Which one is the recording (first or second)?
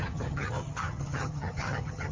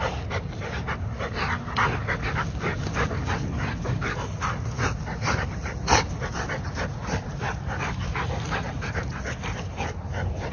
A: second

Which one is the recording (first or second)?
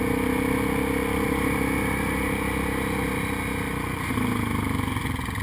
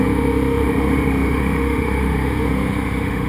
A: first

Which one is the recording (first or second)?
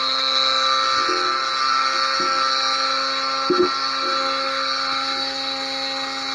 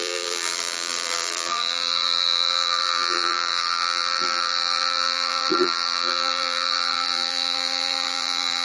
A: first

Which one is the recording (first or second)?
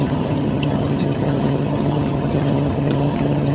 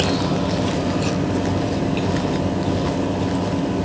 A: second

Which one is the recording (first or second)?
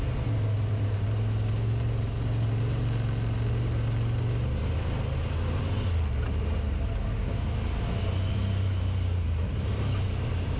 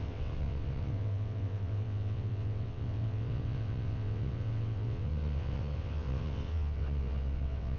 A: first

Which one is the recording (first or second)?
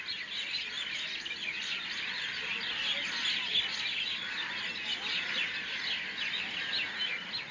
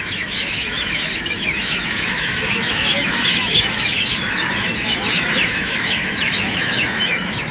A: first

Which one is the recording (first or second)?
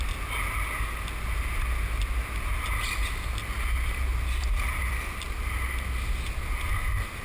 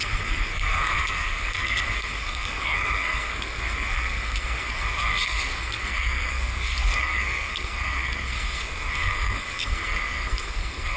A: first